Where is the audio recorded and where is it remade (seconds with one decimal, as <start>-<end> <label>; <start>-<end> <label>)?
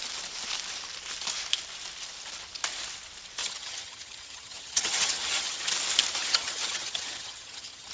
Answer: 0.0-3.4 recorded; 3.4-5.7 remade; 5.7-6.2 recorded; 6.2-7.9 remade